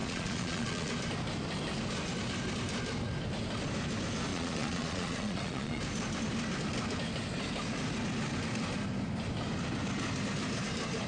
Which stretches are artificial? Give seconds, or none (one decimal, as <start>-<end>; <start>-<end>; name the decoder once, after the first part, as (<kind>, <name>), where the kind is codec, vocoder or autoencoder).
0.0-0.9 (vocoder, Vocos); 4.3-5.8